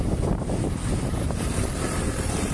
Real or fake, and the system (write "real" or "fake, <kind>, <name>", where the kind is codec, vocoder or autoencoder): fake, vocoder, BigVGAN v2